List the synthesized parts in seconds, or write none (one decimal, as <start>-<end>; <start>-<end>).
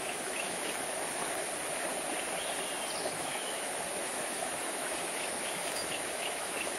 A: 0.0-1.2; 3.0-6.8